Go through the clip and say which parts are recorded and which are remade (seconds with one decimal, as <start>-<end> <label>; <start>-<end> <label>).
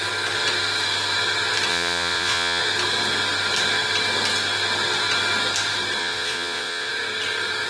0.0-1.7 recorded; 1.7-2.6 remade; 2.6-6.0 recorded; 6.0-6.9 remade; 6.9-7.7 recorded